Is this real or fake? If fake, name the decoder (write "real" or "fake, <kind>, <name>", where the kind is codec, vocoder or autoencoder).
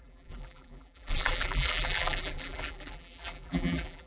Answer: fake, vocoder, BigVGAN v2